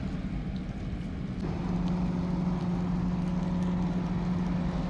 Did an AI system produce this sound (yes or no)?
no